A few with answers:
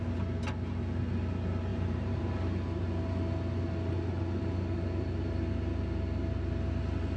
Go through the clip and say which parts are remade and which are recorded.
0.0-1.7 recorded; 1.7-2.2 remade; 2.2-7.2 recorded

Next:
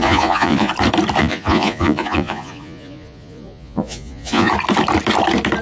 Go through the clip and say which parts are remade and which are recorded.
0.0-0.7 remade; 0.7-1.2 recorded; 1.2-4.5 remade; 4.5-5.6 recorded

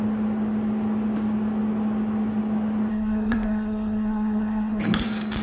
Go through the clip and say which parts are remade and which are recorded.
0.0-2.9 recorded; 2.9-4.8 remade; 4.8-5.4 recorded

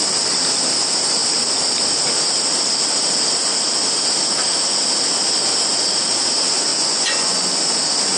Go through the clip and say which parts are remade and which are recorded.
0.0-6.7 recorded; 6.7-7.6 remade; 7.6-8.2 recorded